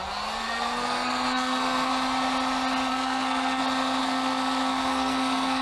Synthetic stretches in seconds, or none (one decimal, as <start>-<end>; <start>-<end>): 0.4-1.9; 2.9-3.6; 4.0-5.6

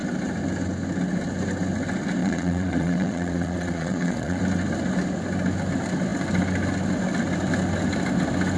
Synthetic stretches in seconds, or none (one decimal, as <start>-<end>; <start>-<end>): 2.2-4.4

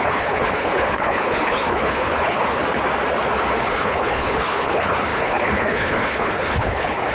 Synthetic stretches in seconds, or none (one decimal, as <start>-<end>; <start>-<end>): 0.0-2.6; 3.6-7.1

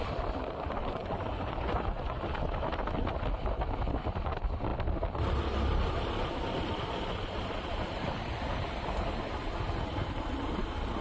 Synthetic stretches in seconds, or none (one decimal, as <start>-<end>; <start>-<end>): 0.8-2.2

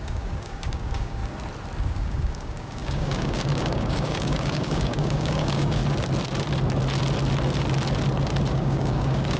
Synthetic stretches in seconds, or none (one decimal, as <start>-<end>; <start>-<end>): 0.0-1.2; 1.8-5.8; 8.5-9.4

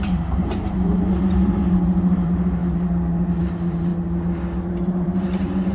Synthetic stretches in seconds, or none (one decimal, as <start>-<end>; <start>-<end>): 0.0-3.9; 4.7-5.7

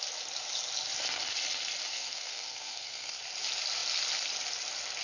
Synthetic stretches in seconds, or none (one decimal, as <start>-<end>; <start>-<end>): 1.9-3.2

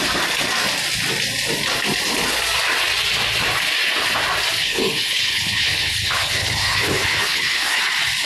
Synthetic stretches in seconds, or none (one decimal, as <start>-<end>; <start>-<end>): 4.6-7.8